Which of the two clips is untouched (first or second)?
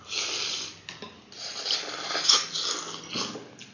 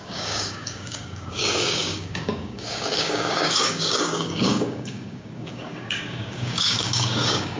first